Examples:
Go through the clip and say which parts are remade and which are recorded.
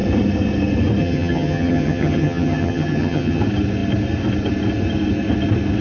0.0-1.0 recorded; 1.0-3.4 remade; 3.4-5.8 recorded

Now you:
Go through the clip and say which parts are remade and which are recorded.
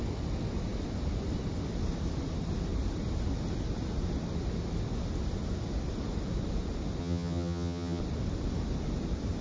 0.0-7.0 recorded; 7.0-8.0 remade; 8.0-9.4 recorded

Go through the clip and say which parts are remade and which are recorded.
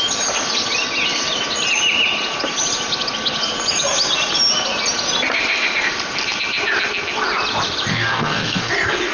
0.0-7.9 recorded; 7.9-8.7 remade; 8.7-9.1 recorded